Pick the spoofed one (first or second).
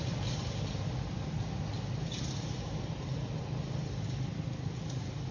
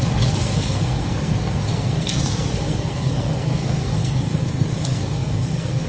second